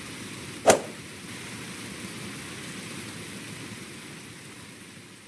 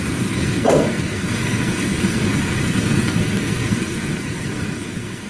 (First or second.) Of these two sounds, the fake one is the second